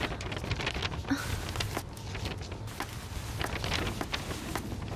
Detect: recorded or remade recorded